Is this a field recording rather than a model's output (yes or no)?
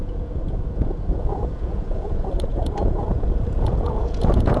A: no